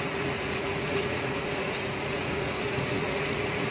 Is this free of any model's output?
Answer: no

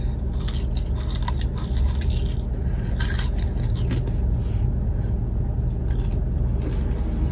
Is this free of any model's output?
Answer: yes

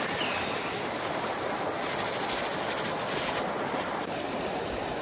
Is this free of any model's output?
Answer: no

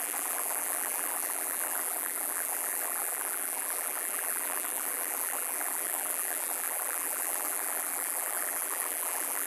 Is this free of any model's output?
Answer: no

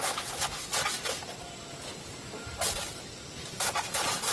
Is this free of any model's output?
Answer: yes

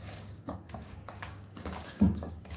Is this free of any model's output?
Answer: no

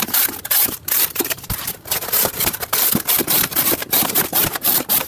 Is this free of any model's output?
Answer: no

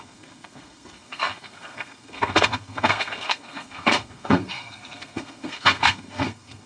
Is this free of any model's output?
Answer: no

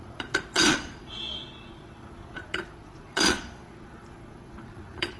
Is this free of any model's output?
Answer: no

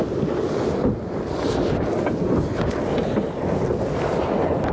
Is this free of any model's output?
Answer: yes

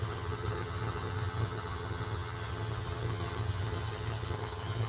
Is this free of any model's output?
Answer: no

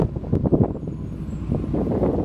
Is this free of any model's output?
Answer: yes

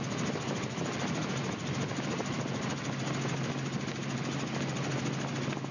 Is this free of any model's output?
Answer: yes